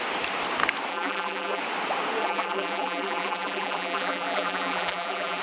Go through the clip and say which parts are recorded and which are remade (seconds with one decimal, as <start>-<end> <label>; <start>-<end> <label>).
0.0-0.9 recorded; 0.9-1.6 remade; 1.6-2.2 recorded; 2.2-5.4 remade